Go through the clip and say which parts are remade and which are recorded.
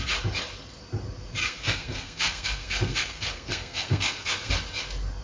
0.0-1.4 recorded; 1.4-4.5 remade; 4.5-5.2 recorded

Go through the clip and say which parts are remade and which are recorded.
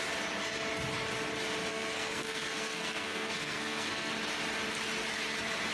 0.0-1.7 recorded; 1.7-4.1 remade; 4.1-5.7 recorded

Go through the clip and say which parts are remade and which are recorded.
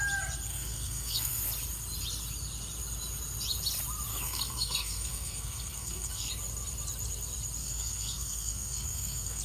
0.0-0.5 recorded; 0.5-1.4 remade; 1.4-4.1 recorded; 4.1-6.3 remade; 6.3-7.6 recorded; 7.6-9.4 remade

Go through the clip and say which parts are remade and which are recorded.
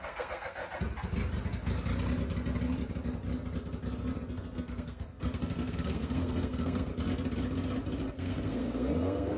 0.0-0.6 remade; 0.6-4.3 recorded; 4.3-6.9 remade; 6.9-8.1 recorded; 8.1-9.4 remade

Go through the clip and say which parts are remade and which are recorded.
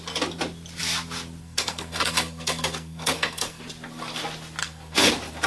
0.0-1.4 recorded; 1.4-3.6 remade; 3.6-4.6 recorded; 4.6-5.1 remade; 5.1-5.5 recorded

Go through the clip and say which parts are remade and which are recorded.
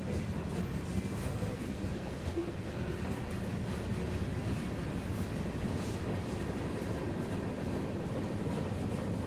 0.0-1.2 recorded; 1.2-3.3 remade; 3.3-9.3 recorded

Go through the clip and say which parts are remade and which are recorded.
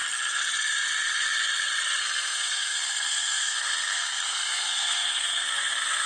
0.0-2.0 recorded; 2.0-6.1 remade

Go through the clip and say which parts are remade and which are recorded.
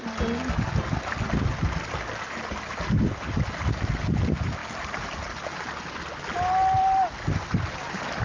0.0-8.2 recorded